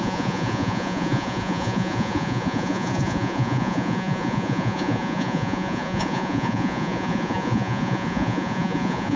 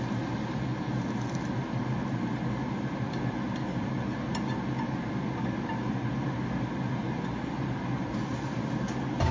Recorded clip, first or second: second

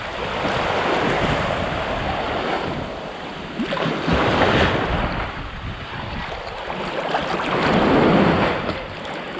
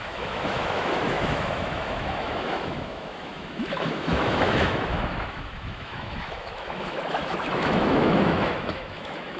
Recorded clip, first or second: first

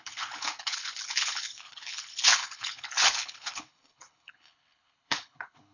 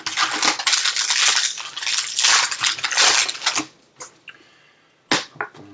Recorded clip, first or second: second